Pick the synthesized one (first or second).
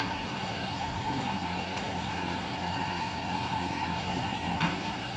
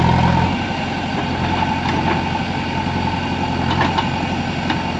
first